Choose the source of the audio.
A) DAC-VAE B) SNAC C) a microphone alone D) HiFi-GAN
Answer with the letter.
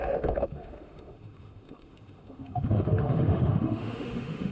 A